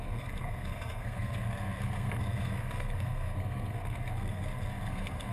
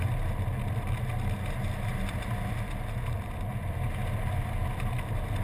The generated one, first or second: first